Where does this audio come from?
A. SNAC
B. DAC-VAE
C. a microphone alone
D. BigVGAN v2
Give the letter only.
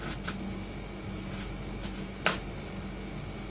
C